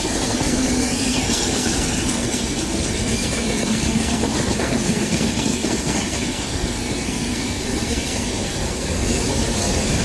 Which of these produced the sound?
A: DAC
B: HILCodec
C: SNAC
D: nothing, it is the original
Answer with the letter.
C